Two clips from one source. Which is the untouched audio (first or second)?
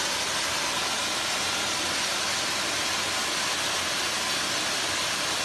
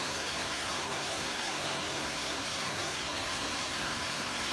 first